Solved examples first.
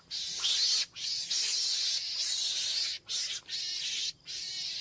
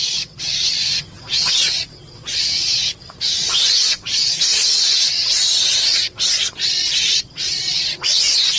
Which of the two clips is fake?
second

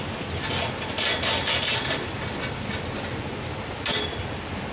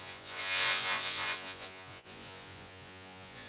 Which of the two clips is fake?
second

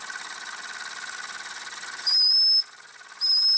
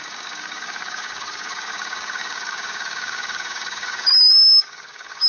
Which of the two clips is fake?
second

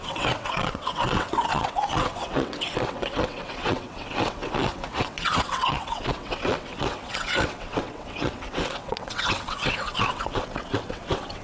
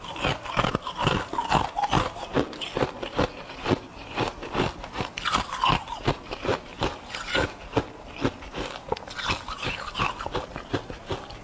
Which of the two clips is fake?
first